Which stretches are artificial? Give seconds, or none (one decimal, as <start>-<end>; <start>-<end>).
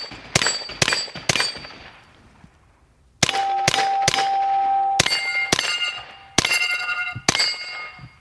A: none